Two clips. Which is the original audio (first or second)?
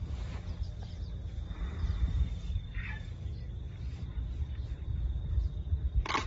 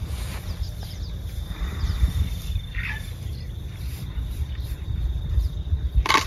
first